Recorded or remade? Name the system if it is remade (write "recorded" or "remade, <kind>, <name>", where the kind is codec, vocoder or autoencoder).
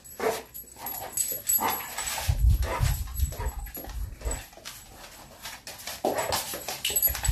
recorded